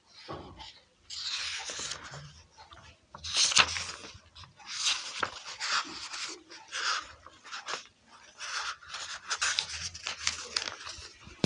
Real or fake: real